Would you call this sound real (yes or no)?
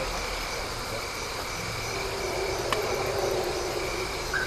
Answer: yes